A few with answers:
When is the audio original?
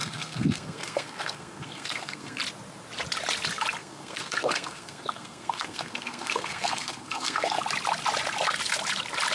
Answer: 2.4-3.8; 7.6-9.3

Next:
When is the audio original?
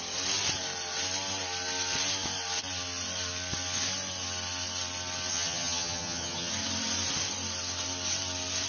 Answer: 0.0-5.3; 6.5-8.7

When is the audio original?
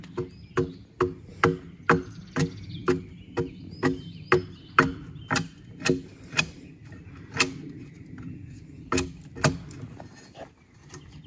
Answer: 0.0-11.3